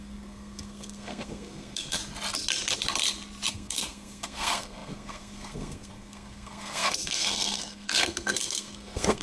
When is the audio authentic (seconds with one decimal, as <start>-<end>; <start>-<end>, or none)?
2.0-3.5